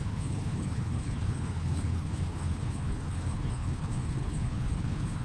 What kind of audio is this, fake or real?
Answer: fake